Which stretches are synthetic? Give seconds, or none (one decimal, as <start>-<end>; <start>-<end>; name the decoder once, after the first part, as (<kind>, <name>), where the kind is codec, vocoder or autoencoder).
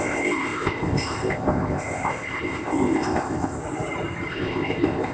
0.0-3.6 (codec, ZipCodec); 4.3-5.1